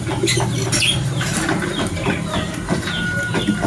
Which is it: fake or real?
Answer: real